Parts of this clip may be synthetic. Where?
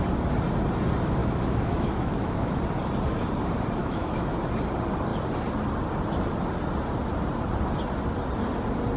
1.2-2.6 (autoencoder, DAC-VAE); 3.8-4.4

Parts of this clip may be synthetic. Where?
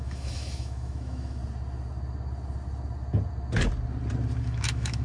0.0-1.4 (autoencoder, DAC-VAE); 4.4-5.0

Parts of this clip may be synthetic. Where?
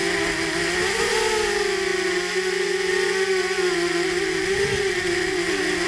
none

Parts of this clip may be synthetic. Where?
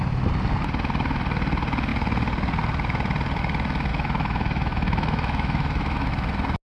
3.9-6.1 (autoencoder, DAC-VAE)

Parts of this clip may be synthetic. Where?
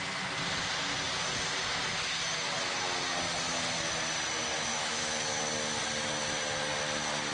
4.5-5.4 (autoencoder, DAC-VAE)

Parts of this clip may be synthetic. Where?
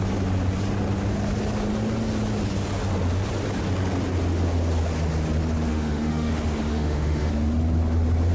5.7-6.3 (autoencoder, DAC-VAE); 6.7-7.3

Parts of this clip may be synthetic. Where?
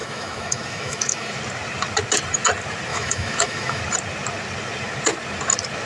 0.0-1.4 (autoencoder, DAC-VAE); 2.9-3.8